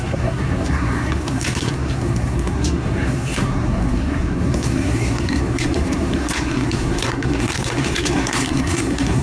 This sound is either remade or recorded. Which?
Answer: remade